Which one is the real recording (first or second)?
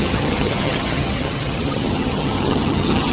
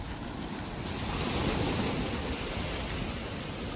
second